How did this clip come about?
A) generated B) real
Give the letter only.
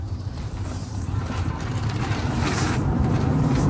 A